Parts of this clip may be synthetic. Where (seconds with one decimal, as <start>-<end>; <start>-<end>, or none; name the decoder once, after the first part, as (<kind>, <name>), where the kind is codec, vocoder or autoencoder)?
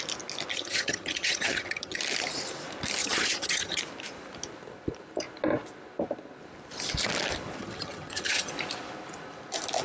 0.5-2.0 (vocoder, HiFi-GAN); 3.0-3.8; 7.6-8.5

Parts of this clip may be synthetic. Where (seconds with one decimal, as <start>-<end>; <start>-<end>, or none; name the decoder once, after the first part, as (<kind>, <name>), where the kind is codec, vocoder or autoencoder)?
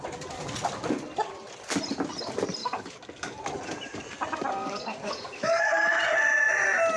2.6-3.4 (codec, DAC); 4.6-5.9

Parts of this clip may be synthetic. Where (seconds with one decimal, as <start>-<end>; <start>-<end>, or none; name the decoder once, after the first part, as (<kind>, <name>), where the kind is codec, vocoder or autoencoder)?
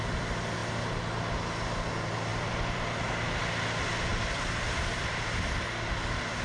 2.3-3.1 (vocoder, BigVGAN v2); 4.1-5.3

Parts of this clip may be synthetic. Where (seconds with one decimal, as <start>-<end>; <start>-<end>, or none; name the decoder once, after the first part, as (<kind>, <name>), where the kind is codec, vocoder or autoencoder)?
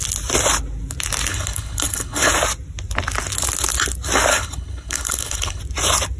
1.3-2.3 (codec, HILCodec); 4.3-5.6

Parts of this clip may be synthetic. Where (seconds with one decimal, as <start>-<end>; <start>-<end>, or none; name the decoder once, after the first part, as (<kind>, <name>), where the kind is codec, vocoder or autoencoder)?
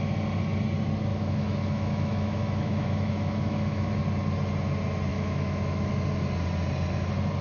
1.1-4.0 (autoencoder, DAC-VAE); 5.1-5.9